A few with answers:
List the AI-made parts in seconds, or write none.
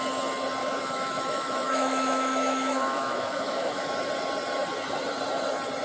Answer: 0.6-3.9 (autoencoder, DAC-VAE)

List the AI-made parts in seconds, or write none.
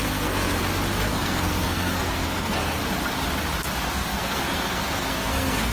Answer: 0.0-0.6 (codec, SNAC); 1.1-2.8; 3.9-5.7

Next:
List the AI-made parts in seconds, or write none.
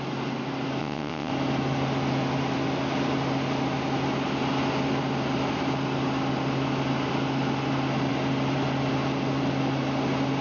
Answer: 0.8-1.3 (vocoder, WaveNeXt)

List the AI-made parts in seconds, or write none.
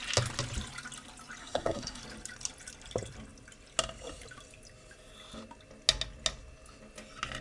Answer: 1.4-2.0 (codec, SNAC)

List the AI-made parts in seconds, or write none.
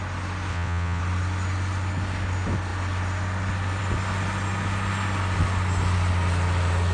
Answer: 0.5-1.0 (vocoder, WaveNeXt)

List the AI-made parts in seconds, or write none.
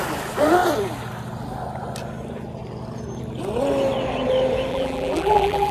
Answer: 4.7-5.7 (vocoder, BigVGAN v2)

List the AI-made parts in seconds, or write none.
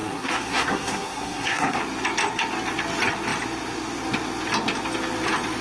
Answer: 0.0-1.8 (codec, SNAC)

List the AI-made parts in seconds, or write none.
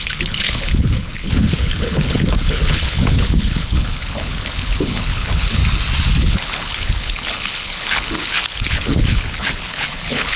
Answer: 0.0-5.6 (codec, HILCodec); 6.2-10.4